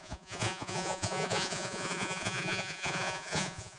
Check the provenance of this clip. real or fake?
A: fake